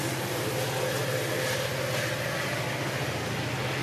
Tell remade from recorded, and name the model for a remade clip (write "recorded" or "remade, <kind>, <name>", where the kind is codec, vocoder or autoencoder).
recorded